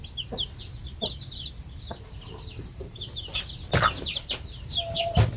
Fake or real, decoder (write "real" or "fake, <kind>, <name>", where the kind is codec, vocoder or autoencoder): real